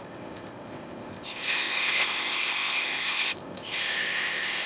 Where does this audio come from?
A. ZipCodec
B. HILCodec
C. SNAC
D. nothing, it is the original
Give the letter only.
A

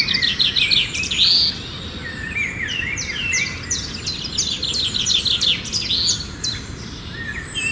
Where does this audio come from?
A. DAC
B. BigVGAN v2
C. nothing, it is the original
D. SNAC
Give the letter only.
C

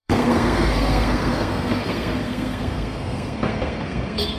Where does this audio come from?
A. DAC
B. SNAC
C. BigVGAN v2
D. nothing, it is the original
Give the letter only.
B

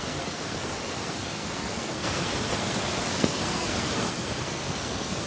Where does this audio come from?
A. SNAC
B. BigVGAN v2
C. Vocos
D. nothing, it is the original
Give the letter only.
A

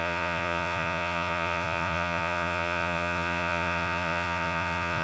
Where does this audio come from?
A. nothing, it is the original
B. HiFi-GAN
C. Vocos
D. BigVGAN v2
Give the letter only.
C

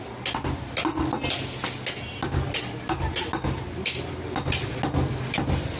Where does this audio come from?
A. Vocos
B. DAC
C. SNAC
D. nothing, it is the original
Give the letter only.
D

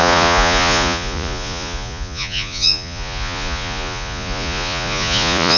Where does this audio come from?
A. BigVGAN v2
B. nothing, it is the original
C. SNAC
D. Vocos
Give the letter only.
D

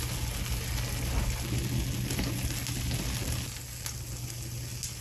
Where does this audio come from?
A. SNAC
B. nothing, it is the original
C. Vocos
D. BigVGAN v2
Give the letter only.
B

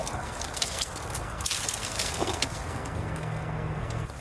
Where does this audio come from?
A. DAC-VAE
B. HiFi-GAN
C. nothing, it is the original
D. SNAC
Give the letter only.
D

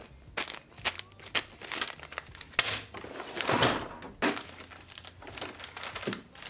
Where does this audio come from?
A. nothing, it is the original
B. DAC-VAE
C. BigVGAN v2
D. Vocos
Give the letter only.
A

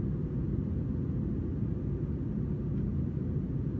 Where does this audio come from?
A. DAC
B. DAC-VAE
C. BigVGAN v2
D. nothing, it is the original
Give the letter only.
D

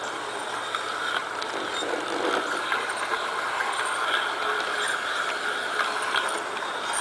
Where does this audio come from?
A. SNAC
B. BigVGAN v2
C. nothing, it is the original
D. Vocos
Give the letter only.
C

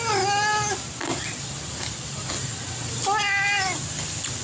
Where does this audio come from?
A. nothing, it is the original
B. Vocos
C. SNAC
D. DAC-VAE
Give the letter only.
A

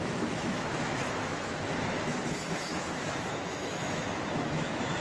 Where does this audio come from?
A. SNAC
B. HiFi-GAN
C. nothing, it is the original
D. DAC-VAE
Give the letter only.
D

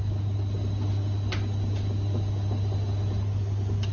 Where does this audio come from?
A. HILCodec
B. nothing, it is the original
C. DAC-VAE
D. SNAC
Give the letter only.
B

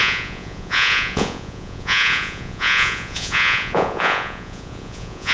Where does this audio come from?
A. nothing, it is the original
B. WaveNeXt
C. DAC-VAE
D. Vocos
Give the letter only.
D